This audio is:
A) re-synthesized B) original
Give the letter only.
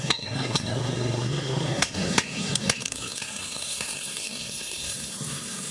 A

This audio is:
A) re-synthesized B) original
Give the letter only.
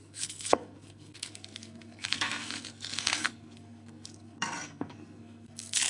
A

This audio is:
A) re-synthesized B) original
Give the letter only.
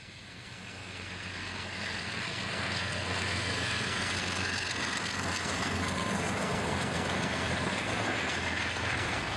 A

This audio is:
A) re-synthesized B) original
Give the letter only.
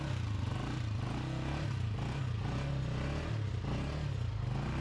B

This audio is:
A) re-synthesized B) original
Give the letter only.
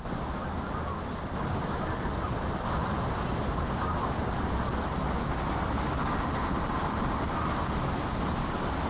B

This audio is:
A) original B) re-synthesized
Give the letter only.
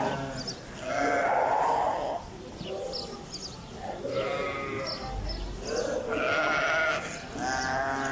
A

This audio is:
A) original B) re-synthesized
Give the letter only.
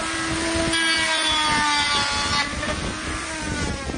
A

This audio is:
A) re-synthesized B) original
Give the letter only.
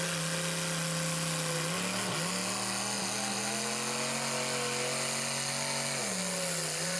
B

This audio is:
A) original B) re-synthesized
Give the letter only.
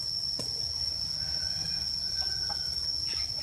A